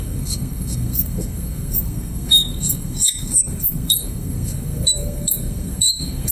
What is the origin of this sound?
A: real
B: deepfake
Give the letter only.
B